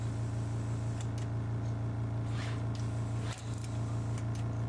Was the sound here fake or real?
real